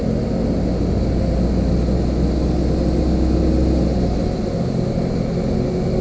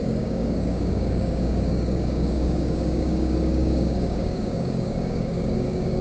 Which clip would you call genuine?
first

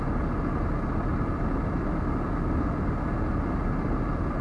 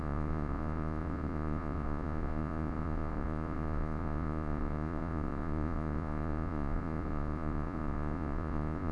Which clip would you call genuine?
first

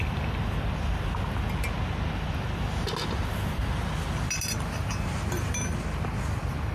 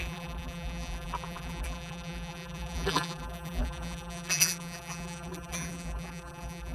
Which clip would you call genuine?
first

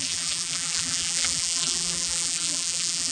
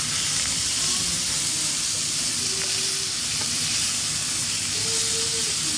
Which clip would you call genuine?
second